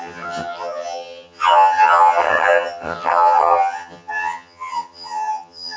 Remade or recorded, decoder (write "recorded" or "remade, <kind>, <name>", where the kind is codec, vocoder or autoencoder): remade, vocoder, HiFi-GAN